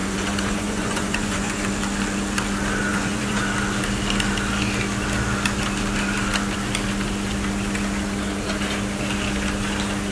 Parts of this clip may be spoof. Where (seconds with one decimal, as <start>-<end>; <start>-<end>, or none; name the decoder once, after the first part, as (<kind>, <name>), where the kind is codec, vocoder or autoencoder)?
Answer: 0.0-1.6 (vocoder, Vocos); 2.9-3.4